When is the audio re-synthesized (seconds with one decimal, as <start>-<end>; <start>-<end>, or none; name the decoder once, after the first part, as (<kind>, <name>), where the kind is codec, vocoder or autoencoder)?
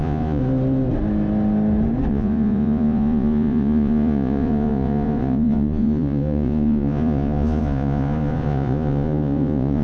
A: 0.0-0.4 (vocoder, Vocos); 2.1-9.8